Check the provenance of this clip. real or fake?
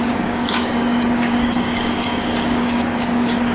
fake